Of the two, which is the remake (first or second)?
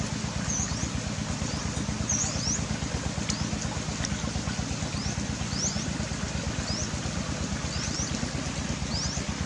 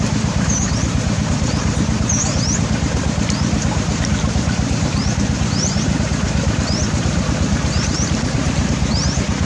second